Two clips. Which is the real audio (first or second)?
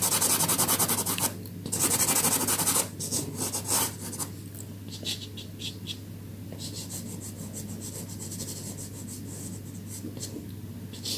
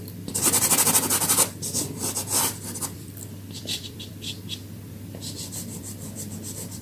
first